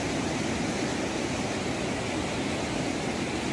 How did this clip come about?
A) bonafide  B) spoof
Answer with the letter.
A